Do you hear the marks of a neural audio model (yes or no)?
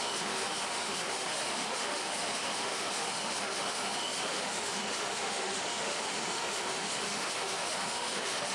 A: yes